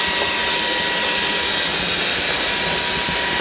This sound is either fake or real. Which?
real